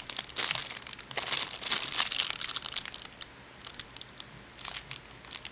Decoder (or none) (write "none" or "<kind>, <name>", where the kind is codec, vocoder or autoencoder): none